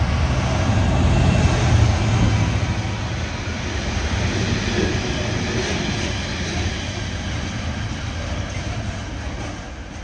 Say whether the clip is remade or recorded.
recorded